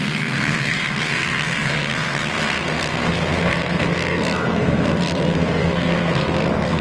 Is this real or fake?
fake